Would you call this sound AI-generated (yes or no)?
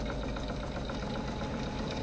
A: yes